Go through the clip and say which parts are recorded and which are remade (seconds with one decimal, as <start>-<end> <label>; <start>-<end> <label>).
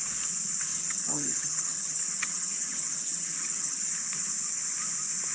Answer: 0.0-0.7 recorded; 0.7-3.9 remade; 3.9-5.3 recorded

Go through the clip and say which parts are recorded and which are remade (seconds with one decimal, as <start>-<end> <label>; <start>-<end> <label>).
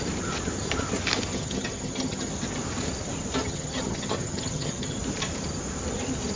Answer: 0.0-1.3 recorded; 1.3-2.3 remade; 2.3-3.4 recorded; 3.4-5.0 remade; 5.0-6.3 recorded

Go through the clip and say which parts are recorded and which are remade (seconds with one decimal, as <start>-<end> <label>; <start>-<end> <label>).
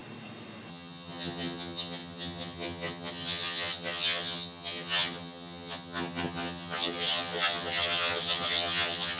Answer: 0.0-0.7 recorded; 0.7-9.2 remade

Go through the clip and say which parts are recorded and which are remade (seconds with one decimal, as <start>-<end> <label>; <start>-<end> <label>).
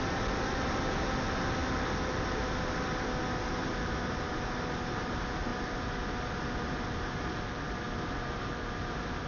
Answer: 0.0-9.3 recorded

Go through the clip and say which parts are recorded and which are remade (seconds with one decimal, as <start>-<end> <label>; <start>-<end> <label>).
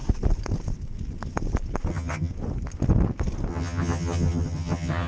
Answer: 0.0-1.9 recorded; 1.9-2.3 remade; 2.3-3.5 recorded; 3.5-5.1 remade